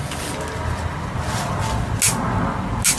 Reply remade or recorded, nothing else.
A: recorded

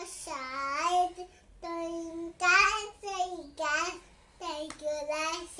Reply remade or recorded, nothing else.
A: recorded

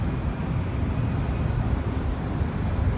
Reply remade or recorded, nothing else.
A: recorded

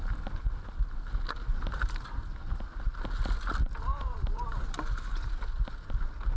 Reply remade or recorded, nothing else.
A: recorded